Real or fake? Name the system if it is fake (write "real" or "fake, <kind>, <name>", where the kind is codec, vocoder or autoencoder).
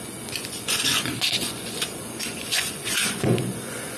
fake, vocoder, Vocos